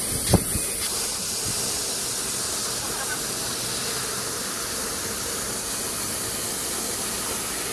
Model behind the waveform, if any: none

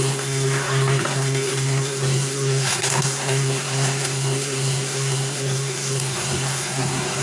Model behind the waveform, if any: codec, SNAC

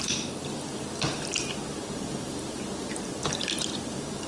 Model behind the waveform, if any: vocoder, BigVGAN v2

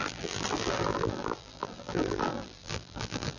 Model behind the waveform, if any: vocoder, BigVGAN v2